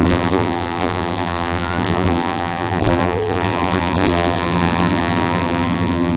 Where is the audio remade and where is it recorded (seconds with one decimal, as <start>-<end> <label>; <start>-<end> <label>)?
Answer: 0.0-6.2 remade

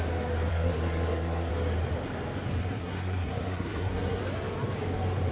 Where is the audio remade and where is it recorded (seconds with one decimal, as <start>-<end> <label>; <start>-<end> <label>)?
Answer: 0.0-0.5 recorded; 0.5-1.5 remade; 1.5-2.6 recorded; 2.6-4.2 remade; 4.2-5.3 recorded

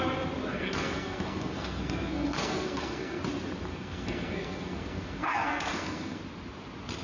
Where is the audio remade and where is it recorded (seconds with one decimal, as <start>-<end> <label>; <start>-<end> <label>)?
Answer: 0.0-0.5 recorded; 0.5-3.2 remade; 3.2-3.7 recorded; 3.7-6.2 remade; 6.2-7.0 recorded